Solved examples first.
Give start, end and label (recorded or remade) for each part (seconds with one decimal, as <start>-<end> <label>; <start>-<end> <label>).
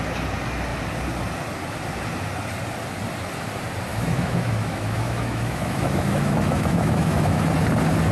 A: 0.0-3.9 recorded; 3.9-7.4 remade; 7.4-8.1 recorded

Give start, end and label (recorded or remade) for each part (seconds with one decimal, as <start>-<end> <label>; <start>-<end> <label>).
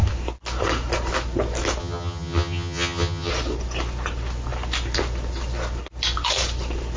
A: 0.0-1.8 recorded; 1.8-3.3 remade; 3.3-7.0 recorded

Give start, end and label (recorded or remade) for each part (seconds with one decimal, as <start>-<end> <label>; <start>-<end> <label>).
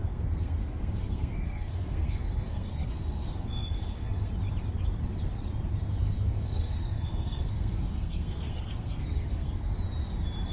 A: 0.0-4.3 remade; 4.3-6.0 recorded; 6.0-9.7 remade; 9.7-10.5 recorded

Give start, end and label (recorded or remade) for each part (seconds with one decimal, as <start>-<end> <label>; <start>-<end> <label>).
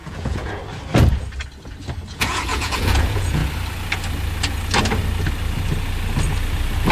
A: 0.0-0.6 remade; 0.6-2.1 recorded; 2.1-3.4 remade; 3.4-6.9 recorded